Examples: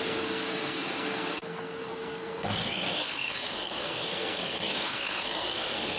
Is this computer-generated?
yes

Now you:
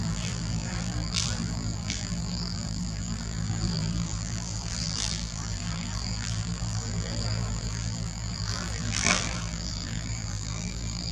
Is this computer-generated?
yes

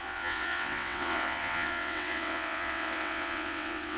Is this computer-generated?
yes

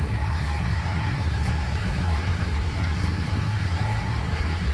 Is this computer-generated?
yes